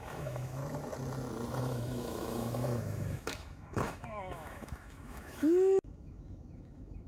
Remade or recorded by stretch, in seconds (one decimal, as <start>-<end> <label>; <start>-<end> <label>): 0.0-0.6 remade; 0.6-1.6 recorded; 1.6-7.1 remade